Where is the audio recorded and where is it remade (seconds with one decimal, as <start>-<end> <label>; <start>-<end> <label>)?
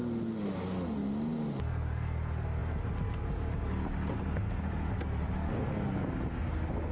0.0-6.9 recorded